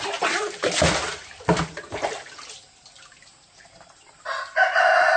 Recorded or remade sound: recorded